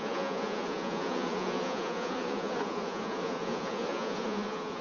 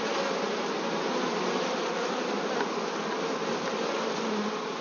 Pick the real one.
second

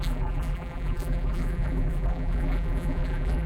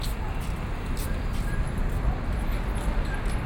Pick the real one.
second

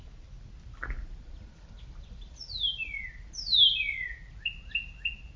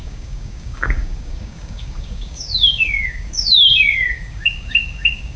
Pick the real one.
first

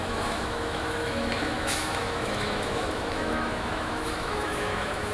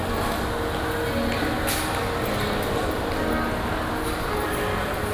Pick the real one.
second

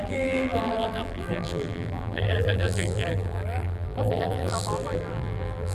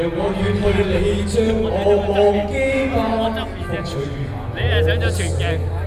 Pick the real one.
second